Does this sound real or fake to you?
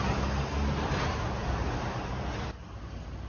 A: real